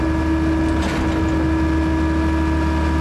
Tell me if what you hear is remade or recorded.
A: recorded